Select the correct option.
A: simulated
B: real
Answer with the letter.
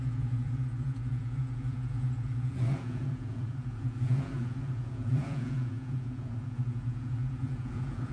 A